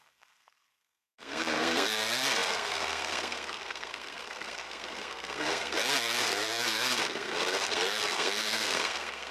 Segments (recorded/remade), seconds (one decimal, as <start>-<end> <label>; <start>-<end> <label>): 0.0-9.3 remade